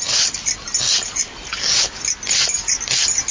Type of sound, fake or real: real